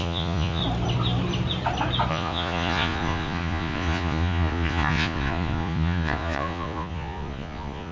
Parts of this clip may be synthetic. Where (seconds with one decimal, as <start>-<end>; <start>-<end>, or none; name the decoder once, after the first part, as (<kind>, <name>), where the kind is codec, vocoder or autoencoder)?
0.0-0.6 (vocoder, Vocos); 2.1-7.9